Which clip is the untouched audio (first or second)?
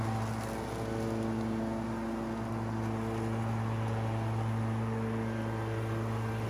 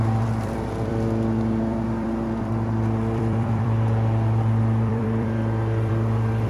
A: first